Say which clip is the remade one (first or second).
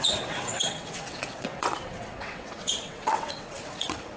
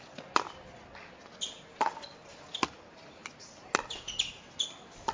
first